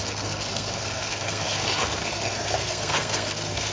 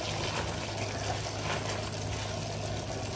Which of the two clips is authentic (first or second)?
second